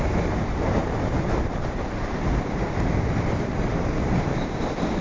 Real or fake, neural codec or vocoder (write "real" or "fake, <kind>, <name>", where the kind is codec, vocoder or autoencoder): fake, vocoder, BigVGAN v2